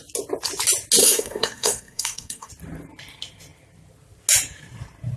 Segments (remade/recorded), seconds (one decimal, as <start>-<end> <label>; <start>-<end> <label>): 0.0-1.0 recorded; 1.0-2.5 remade; 2.5-5.2 recorded